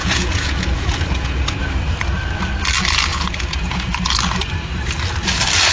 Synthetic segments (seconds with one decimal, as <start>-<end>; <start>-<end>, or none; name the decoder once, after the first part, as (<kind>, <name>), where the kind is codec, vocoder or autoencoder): 0.0-1.4 (vocoder, Vocos); 3.1-3.9